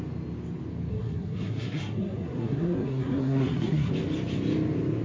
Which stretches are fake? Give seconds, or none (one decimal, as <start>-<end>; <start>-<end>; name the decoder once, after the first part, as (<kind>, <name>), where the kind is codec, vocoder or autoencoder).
0.9-3.9 (codec, SNAC)